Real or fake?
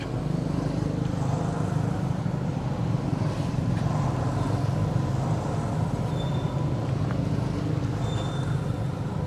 real